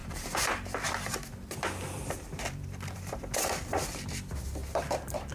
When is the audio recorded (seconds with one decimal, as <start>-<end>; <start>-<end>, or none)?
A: none